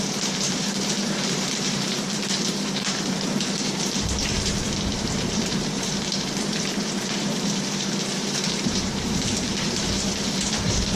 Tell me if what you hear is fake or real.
fake